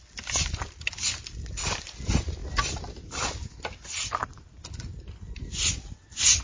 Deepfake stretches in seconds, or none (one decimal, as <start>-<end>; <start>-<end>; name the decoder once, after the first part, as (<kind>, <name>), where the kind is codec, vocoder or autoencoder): none